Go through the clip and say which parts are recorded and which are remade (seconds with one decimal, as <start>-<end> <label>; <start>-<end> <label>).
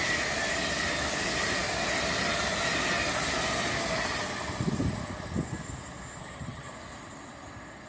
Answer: 0.0-6.2 recorded; 6.2-6.7 remade; 6.7-7.9 recorded